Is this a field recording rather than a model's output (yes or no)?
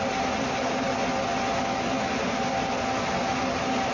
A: yes